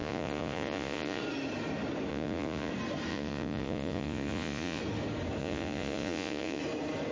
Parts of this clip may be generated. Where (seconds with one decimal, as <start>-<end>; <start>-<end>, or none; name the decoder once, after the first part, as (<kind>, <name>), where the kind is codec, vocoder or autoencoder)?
0.0-1.2 (vocoder, Vocos); 2.1-2.7; 3.1-4.8; 5.4-6.6